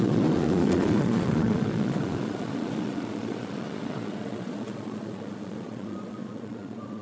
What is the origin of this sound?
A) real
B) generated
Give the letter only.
B